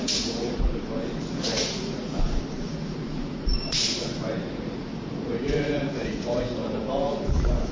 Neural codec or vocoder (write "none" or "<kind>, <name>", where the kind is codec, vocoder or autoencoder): vocoder, Vocos